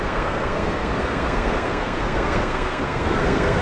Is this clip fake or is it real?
fake